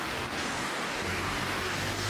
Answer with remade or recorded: remade